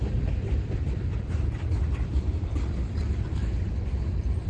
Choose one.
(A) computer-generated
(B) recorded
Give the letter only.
A